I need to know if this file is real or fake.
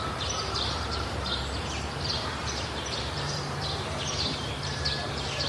fake